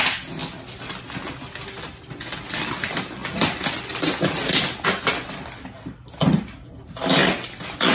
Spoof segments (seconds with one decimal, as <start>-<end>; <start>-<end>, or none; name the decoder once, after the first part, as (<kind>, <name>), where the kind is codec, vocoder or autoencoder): none